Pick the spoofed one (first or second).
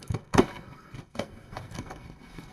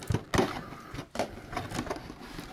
first